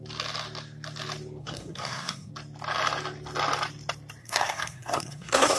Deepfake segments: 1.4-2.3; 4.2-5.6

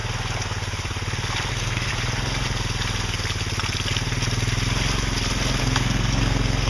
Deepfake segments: 1.5-1.9; 5.6-6.7

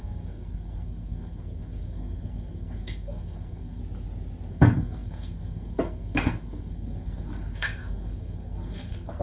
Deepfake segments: 0.0-3.8; 4.5-9.2

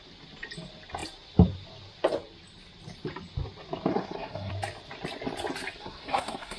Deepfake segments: 3.9-4.5; 5.8-6.6

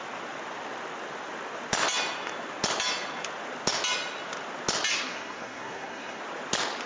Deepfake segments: 4.9-6.2

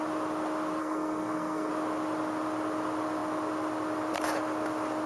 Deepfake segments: 0.8-1.7

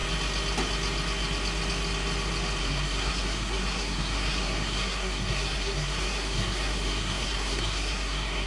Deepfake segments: 2.6-8.5

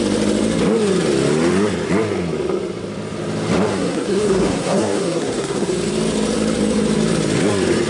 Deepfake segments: 3.7-5.7